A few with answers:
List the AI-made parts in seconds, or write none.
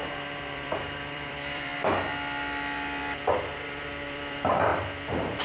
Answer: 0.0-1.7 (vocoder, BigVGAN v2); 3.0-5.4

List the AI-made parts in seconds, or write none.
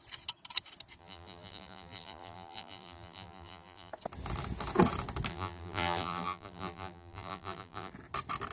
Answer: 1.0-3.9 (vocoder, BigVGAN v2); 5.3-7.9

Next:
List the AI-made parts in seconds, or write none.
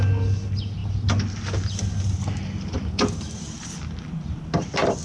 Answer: none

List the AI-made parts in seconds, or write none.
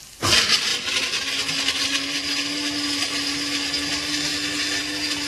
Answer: none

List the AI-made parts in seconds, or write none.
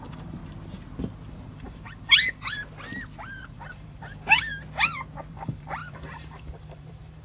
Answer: 0.0-0.4 (vocoder, BigVGAN v2); 1.2-2.6; 3.4-4.5; 5.3-7.2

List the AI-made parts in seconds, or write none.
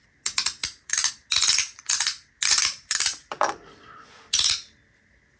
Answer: 0.6-1.1 (vocoder, BigVGAN v2); 2.6-4.1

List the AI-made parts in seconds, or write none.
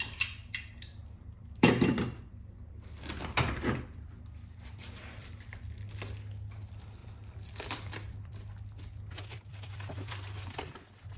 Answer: 1.0-5.7 (vocoder, BigVGAN v2); 7.0-11.2